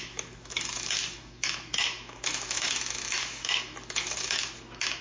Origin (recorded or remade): remade